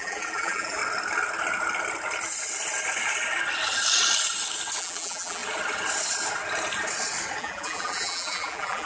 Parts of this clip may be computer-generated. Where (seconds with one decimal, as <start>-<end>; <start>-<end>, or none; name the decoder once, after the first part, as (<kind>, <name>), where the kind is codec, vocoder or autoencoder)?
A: 0.0-0.8 (vocoder, BigVGAN v2); 4.8-5.4; 7.4-8.9